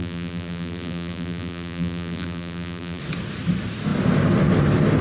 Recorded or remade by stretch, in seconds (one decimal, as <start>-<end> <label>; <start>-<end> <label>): 0.0-3.0 remade; 3.0-5.0 recorded